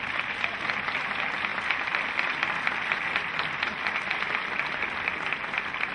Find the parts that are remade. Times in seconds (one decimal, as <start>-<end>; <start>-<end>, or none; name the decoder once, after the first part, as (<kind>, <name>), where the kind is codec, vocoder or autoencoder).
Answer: none